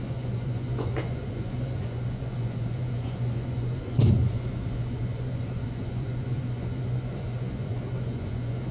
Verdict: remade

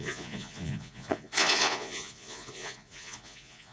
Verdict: remade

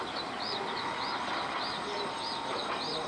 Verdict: recorded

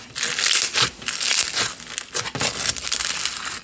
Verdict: recorded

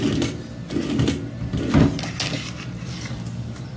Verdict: recorded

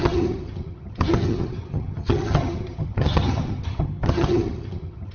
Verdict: remade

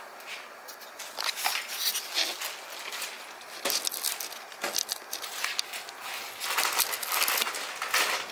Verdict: recorded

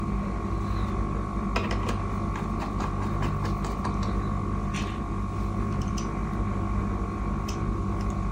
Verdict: recorded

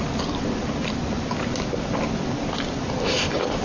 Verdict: recorded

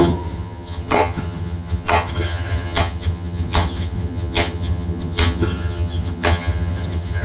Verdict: remade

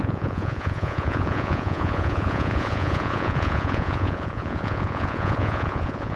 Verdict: remade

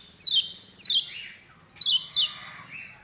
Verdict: recorded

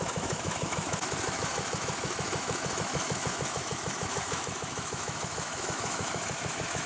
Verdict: remade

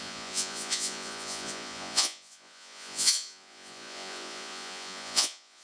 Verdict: remade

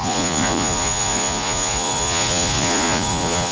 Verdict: remade